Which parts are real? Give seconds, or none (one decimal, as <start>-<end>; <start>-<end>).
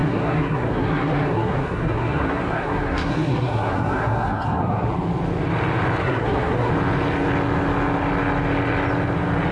4.9-6.0; 6.7-9.5